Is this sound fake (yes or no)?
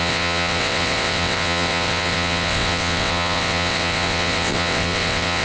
yes